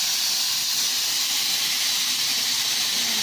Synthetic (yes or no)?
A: no